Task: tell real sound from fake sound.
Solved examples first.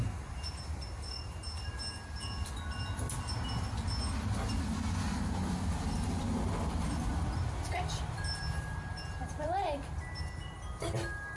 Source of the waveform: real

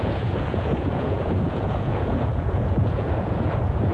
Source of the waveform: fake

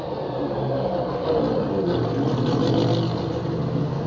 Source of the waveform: real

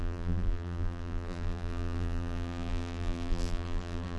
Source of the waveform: fake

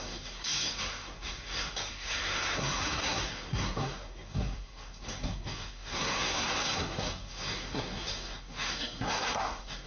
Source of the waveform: fake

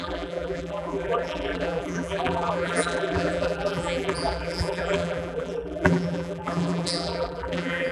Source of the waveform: fake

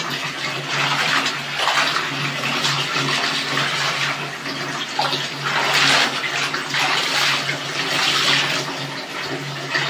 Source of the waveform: real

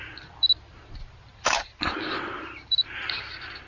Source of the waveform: real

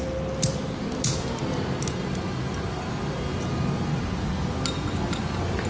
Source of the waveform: real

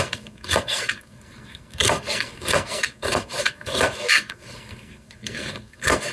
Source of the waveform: fake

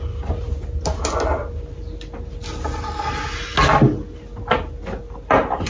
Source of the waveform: real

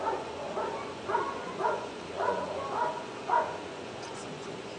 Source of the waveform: fake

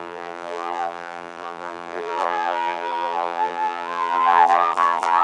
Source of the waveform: fake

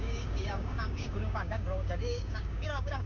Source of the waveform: fake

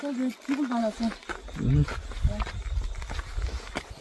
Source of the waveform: real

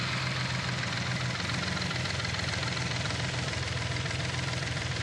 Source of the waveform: real